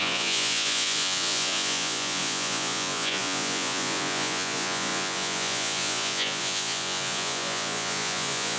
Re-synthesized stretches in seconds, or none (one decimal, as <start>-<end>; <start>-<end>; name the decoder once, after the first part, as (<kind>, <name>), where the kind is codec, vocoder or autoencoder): 0.0-8.6 (vocoder, Vocos)